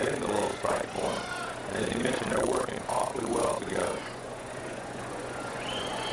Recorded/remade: remade